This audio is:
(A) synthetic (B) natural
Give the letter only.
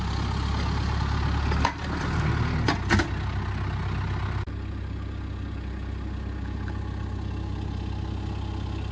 B